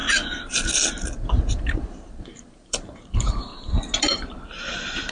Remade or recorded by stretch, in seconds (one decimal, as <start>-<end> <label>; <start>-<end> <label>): 0.0-1.5 recorded; 1.5-3.5 remade; 3.5-4.0 recorded; 4.0-5.1 remade